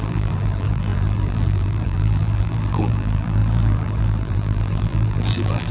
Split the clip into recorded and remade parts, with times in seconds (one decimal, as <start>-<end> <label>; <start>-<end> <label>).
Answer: 0.0-5.7 remade